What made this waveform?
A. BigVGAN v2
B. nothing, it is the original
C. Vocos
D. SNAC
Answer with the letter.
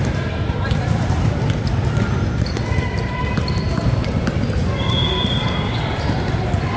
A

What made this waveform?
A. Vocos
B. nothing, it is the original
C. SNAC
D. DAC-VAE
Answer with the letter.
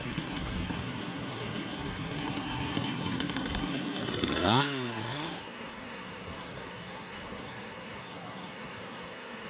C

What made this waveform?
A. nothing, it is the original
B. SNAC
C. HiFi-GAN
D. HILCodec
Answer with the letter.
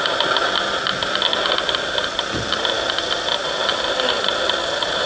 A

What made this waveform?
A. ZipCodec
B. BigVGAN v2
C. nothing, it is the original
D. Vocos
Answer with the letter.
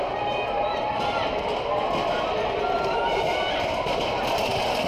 C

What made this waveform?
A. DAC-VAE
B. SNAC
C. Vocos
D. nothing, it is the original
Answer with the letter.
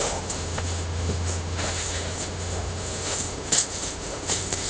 A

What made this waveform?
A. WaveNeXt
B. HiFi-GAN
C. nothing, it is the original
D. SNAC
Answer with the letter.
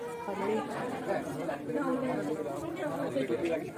C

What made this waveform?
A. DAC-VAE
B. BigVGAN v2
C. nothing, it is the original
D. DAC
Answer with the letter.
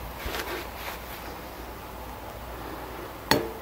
C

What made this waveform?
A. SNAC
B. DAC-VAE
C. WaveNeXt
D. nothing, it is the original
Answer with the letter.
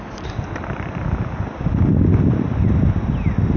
D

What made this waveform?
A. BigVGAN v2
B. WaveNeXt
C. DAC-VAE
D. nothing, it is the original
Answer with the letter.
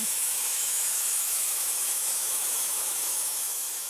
C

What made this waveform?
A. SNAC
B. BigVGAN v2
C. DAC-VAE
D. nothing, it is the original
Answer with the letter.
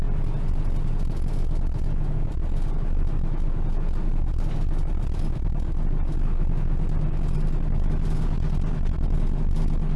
D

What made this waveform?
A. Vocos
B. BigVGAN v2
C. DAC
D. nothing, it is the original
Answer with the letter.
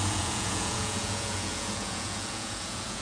A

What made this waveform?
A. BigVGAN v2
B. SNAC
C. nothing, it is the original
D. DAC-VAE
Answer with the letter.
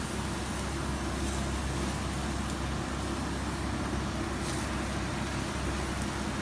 C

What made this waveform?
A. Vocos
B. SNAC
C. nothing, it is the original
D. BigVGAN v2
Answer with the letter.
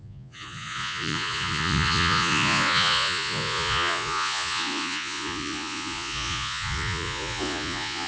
A